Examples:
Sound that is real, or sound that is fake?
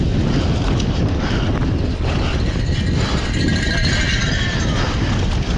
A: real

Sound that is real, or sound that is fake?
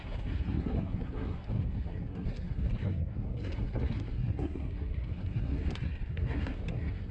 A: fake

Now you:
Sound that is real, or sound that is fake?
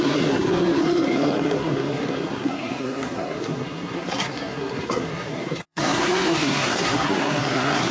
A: fake